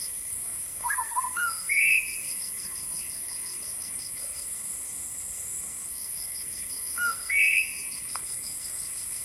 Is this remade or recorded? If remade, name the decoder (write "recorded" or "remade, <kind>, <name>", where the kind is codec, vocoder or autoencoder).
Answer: remade, codec, SNAC